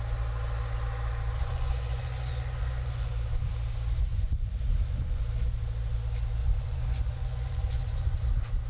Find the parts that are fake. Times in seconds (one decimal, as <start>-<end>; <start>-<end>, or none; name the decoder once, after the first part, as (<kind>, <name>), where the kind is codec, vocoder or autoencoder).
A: 1.4-3.1 (vocoder, Vocos); 4.1-5.2; 6.4-8.2